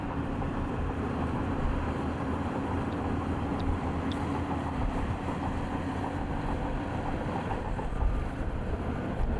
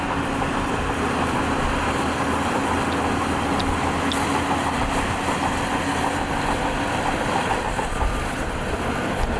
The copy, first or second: first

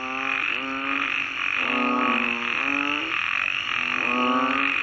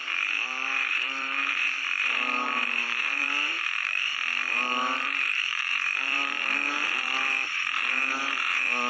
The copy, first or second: second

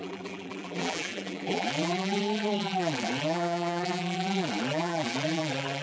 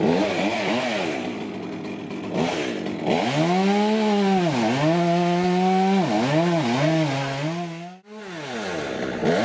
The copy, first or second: first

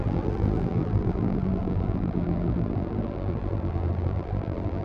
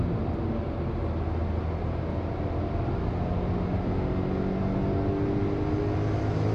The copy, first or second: first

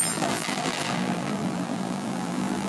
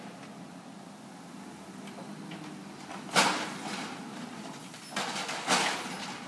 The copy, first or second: first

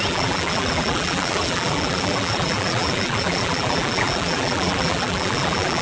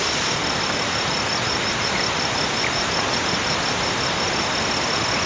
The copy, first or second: first